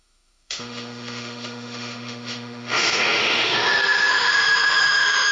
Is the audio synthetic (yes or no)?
yes